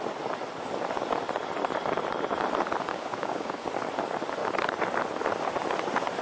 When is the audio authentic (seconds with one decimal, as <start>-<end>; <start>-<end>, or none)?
0.0-2.9; 3.6-6.2